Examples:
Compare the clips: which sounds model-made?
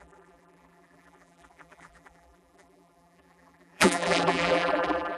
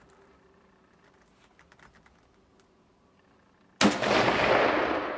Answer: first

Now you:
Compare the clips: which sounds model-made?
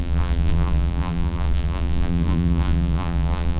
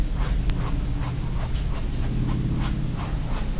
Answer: first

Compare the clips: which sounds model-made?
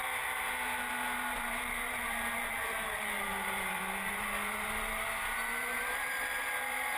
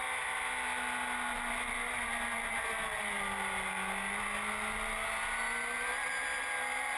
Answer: first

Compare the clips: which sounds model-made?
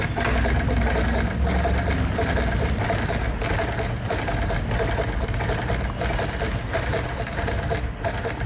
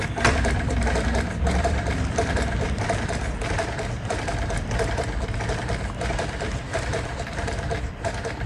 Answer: second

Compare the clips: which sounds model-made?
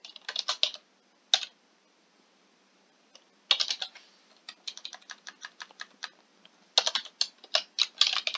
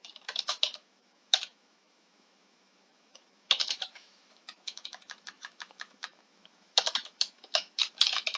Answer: second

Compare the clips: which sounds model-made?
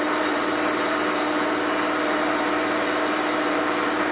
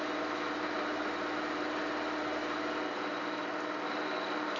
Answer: first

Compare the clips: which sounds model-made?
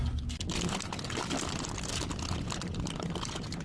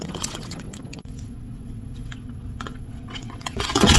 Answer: second